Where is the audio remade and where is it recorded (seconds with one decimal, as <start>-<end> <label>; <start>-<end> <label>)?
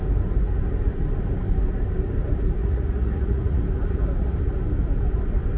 0.0-2.6 recorded; 2.6-3.6 remade; 3.6-5.6 recorded